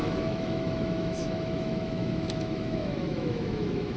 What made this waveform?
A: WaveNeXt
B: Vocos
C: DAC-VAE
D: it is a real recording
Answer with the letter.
C